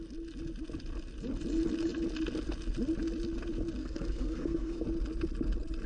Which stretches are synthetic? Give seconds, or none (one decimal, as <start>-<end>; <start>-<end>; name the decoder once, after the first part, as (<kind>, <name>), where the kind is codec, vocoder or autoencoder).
3.8-4.8 (codec, SNAC)